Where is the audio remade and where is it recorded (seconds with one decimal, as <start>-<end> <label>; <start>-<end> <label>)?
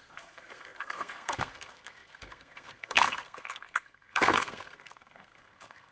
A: 0.0-5.9 remade